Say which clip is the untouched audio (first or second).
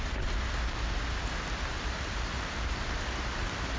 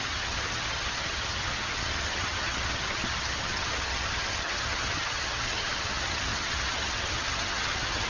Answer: first